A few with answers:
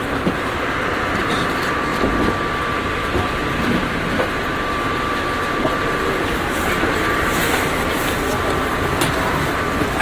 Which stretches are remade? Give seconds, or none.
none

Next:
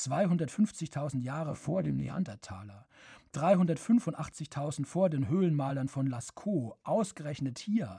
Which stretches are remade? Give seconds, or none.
1.5-2.2 (vocoder, WaveNeXt)

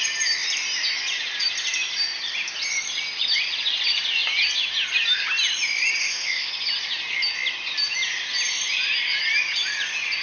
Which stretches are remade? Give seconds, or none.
6.0-6.5 (codec, ZipCodec)